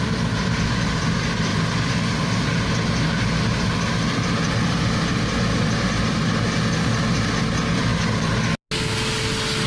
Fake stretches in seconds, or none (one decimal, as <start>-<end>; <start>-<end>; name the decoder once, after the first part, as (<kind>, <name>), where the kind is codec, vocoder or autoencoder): none